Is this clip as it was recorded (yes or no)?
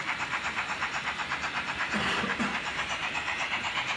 no